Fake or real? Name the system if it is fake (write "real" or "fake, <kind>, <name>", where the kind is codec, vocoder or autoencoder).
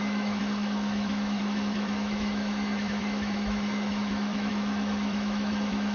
fake, autoencoder, DAC-VAE